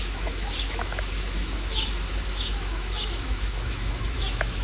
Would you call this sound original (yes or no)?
no